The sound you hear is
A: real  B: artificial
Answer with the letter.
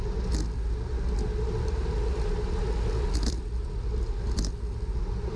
A